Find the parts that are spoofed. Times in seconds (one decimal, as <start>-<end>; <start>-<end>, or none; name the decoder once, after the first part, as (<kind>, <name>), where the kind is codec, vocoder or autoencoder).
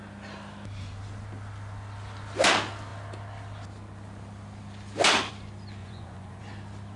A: 5.8-6.4 (vocoder, Vocos)